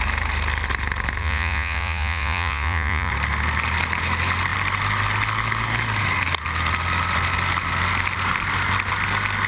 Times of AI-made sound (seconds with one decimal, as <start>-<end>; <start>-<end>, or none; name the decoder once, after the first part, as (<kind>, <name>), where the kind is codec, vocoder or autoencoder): 1.2-3.1 (vocoder, Vocos)

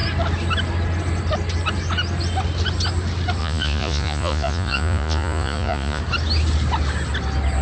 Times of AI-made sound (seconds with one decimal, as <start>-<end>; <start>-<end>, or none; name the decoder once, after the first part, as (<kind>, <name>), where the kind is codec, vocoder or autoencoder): 3.4-6.0 (vocoder, Vocos)

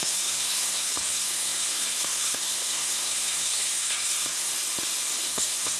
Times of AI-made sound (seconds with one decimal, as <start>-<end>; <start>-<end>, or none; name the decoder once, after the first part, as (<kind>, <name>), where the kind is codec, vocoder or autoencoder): 0.0-4.5 (codec, SNAC); 5.2-5.8

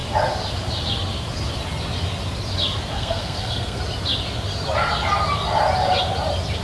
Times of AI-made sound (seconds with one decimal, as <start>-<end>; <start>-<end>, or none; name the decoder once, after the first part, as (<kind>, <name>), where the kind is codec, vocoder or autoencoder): 2.9-3.8 (codec, SNAC)

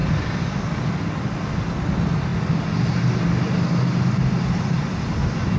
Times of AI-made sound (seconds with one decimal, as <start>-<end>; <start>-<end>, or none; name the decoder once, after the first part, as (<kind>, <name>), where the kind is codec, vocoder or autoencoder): none

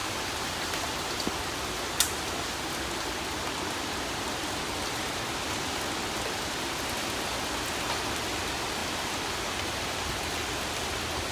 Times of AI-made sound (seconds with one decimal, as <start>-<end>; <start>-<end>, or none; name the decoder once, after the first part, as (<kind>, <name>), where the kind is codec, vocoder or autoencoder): none

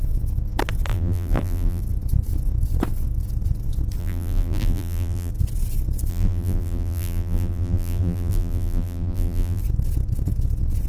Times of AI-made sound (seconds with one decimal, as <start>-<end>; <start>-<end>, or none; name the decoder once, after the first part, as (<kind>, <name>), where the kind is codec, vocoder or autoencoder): 0.9-1.8 (vocoder, BigVGAN v2); 4.0-5.3; 6.1-9.6